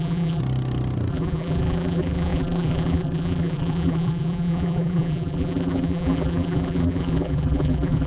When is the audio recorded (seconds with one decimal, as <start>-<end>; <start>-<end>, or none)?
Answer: 0.4-1.1

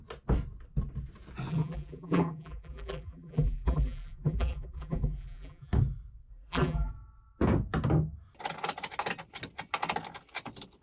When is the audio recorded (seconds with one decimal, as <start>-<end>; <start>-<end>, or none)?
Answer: 0.0-1.5; 5.7-6.3; 6.9-10.8

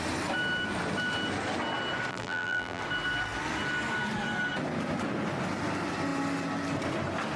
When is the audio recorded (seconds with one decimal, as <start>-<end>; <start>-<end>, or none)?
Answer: 0.0-2.1; 2.8-7.4